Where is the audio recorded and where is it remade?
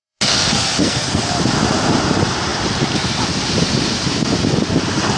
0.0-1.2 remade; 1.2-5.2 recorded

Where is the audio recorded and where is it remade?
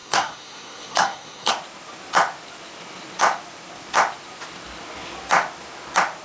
0.0-1.5 remade; 1.5-6.2 recorded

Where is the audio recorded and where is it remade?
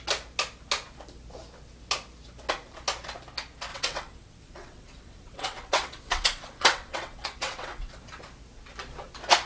0.0-3.7 recorded; 3.7-7.9 remade; 7.9-9.5 recorded